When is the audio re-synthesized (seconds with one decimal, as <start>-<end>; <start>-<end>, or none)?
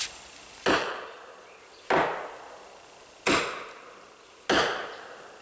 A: 0.8-1.6